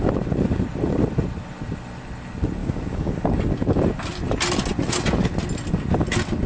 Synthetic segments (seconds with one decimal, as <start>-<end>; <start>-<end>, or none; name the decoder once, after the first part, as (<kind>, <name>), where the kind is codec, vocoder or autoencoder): 2.6-3.3 (codec, DAC)